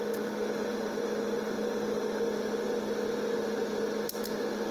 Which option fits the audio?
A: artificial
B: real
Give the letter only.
B